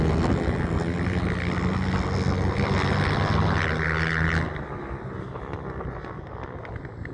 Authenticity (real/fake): real